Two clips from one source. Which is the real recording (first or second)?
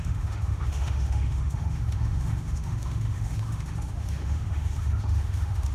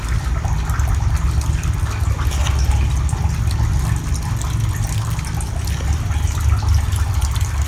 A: second